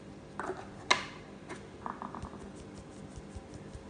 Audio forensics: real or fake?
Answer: real